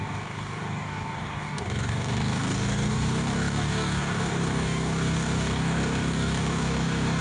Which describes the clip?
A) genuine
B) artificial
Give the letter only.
B